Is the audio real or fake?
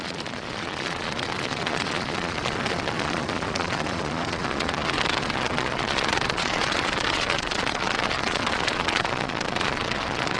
fake